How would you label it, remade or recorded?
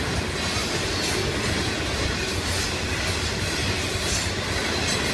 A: recorded